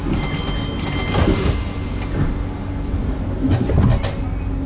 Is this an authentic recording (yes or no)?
yes